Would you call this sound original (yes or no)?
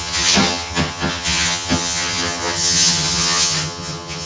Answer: no